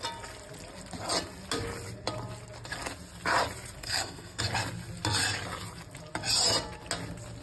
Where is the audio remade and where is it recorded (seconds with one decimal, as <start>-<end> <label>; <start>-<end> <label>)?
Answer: 0.0-3.8 recorded; 3.8-4.4 remade; 4.4-7.4 recorded